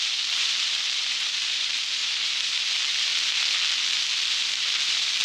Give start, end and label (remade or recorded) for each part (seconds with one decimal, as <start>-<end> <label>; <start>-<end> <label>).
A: 0.0-3.1 remade; 3.1-3.9 recorded; 3.9-5.2 remade

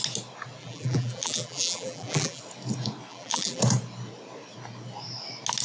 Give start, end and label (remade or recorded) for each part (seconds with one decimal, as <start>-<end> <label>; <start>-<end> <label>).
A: 0.0-0.6 recorded; 0.6-2.4 remade; 2.4-3.1 recorded; 3.1-3.6 remade; 3.6-5.6 recorded

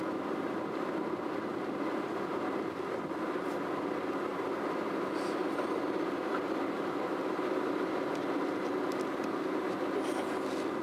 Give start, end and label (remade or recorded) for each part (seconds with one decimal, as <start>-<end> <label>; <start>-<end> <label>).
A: 0.0-10.8 recorded

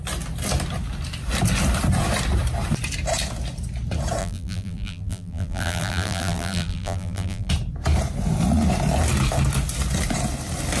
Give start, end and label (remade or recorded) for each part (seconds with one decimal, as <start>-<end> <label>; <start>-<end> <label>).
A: 0.0-4.2 recorded; 4.2-7.5 remade; 7.5-10.8 recorded

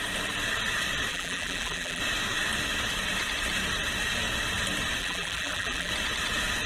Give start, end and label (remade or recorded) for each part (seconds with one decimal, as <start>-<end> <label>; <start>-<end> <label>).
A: 0.0-1.1 recorded; 1.1-2.0 remade; 2.0-5.0 recorded; 5.0-5.9 remade; 5.9-6.7 recorded

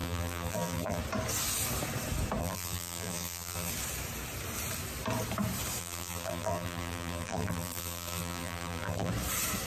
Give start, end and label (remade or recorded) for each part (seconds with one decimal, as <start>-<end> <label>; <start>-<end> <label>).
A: 0.0-1.0 remade; 1.0-2.4 recorded; 2.4-3.7 remade; 3.7-5.8 recorded; 5.8-9.1 remade; 9.1-9.7 recorded

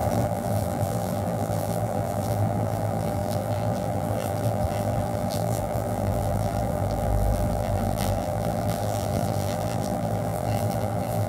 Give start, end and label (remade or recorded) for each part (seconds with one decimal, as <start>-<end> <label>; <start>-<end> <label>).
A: 0.0-11.3 remade

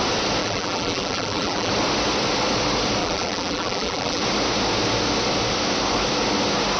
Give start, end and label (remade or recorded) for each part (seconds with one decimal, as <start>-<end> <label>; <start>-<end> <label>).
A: 0.0-0.4 recorded; 0.4-1.7 remade; 1.7-3.0 recorded; 3.0-4.2 remade; 4.2-6.8 recorded